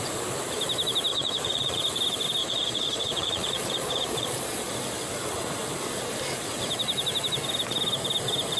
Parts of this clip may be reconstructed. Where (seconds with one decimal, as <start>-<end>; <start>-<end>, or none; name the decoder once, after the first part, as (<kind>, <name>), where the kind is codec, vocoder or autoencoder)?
1.1-1.8 (vocoder, Vocos); 2.4-4.7

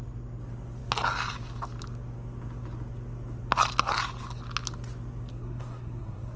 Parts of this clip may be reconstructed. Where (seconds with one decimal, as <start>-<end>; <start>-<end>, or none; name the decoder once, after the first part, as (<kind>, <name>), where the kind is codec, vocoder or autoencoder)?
5.3-6.4 (codec, SNAC)

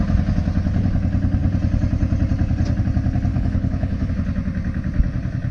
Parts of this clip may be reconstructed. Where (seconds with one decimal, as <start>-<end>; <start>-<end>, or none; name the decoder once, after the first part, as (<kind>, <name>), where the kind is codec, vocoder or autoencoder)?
3.3-4.1 (codec, HILCodec)

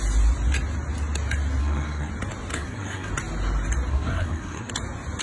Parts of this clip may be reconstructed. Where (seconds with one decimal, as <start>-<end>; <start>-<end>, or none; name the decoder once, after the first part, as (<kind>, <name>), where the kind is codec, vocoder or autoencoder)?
1.6-2.1 (codec, SNAC); 2.5-3.1; 3.9-4.7

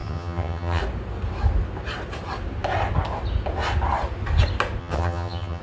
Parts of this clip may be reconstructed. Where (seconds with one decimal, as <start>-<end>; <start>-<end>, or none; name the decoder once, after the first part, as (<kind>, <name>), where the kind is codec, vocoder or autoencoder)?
0.0-0.8 (vocoder, HiFi-GAN); 4.8-5.6

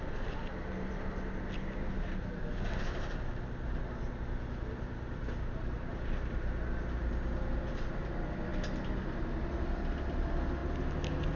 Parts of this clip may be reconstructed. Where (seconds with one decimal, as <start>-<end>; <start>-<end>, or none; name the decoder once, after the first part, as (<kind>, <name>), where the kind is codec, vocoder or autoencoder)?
none

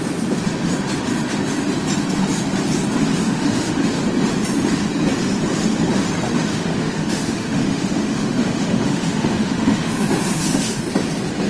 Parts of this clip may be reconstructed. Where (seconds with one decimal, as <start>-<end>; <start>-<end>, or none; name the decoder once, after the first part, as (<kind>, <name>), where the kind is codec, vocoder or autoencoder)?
3.1-3.8 (autoencoder, DAC-VAE); 6.5-10.8